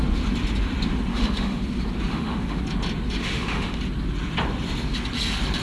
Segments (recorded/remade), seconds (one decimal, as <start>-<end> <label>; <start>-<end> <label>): 0.0-1.1 recorded; 1.1-1.6 remade; 1.6-2.1 recorded; 2.1-2.6 remade; 2.6-3.2 recorded; 3.2-3.8 remade; 3.8-5.6 recorded